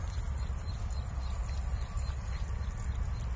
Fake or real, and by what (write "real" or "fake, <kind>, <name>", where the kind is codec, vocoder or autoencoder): real